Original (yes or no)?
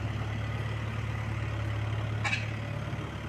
yes